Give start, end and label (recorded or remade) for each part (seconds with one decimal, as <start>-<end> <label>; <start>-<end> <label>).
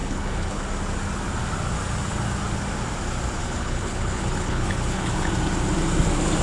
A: 0.0-0.6 remade; 0.6-3.4 recorded; 3.4-5.3 remade; 5.3-6.4 recorded